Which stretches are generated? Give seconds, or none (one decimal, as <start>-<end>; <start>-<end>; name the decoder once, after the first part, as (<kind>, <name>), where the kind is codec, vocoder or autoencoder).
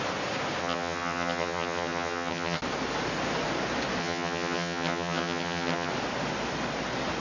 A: 0.6-2.6 (vocoder, HiFi-GAN); 4.0-5.9